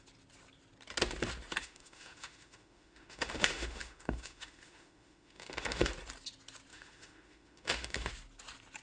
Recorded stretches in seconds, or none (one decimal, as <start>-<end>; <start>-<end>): 0.0-1.6; 5.9-6.7; 8.1-8.8